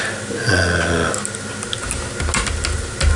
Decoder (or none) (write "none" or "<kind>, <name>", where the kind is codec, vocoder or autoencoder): none